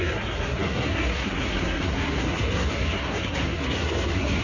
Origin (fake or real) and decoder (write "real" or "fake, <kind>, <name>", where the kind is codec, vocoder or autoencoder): fake, codec, SNAC